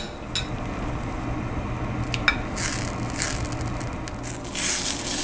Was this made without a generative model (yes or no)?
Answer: yes